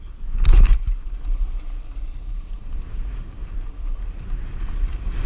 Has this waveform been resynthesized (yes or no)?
yes